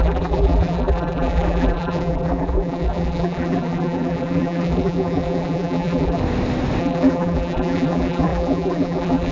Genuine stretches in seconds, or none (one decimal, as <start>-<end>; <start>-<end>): 6.2-6.8